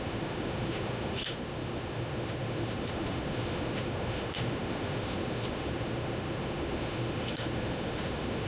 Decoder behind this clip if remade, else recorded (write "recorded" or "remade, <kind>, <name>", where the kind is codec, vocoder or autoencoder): remade, autoencoder, DAC-VAE